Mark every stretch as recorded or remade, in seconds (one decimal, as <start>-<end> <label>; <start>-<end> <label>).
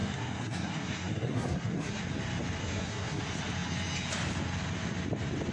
0.0-2.0 remade; 2.0-2.6 recorded; 2.6-3.2 remade; 3.2-5.5 recorded